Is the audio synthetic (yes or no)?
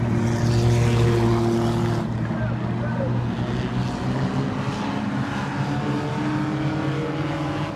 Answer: no